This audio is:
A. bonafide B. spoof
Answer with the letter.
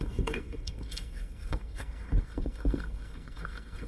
B